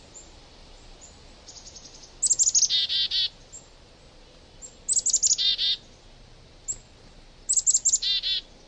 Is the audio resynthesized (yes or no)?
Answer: no